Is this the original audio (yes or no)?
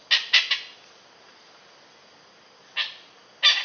yes